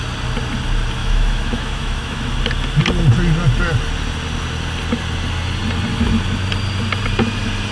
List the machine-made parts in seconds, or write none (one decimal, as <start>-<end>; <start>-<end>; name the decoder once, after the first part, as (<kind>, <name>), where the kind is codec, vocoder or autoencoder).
1.0-2.4 (autoencoder, DAC-VAE)